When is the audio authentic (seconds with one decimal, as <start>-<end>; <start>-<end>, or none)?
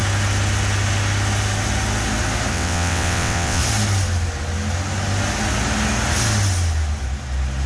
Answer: 0.0-2.5; 3.6-7.7